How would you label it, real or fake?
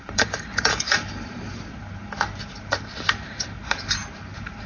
fake